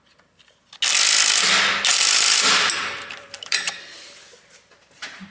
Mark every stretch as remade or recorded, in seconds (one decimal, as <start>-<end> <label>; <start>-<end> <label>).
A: 0.0-1.9 recorded; 1.9-5.3 remade